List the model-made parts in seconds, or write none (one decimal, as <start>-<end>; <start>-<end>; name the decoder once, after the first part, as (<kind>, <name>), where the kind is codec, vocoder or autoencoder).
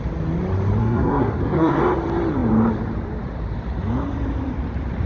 0.8-1.8 (codec, SNAC)